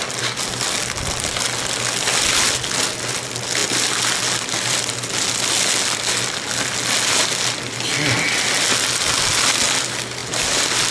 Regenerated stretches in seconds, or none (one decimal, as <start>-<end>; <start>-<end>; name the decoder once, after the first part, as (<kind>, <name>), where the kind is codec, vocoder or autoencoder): none